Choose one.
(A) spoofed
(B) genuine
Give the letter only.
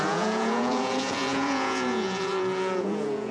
A